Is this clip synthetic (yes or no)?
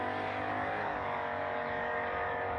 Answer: yes